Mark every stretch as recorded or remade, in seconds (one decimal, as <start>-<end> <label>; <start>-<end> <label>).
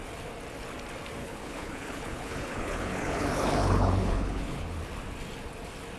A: 0.0-1.2 recorded; 1.2-4.8 remade; 4.8-6.0 recorded